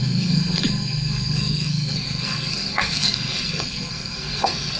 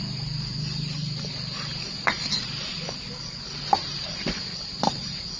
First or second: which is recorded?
second